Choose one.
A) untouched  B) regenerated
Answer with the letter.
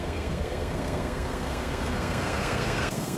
B